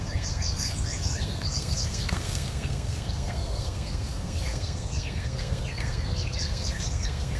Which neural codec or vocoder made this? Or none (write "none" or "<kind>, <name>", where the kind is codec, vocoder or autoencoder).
codec, SNAC